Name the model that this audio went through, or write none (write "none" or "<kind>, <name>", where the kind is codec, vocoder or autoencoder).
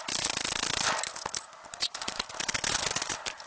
none